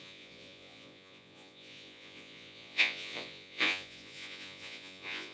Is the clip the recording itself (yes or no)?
no